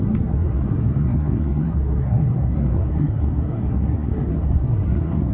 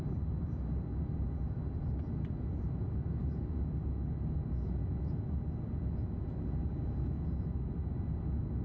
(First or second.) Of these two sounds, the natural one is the second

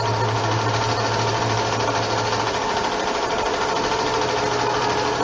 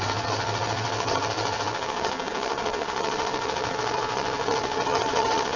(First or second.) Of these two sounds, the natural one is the first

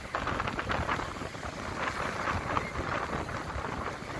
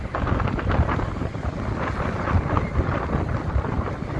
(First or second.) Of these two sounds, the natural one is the first